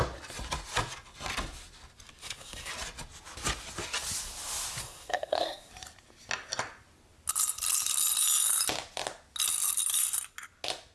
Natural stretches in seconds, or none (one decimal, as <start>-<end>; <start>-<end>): 0.0-2.2; 2.7-4.8; 5.7-10.9